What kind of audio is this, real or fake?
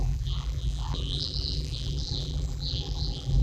fake